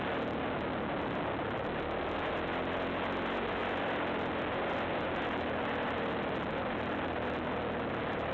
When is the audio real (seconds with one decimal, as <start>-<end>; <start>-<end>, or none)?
0.0-8.3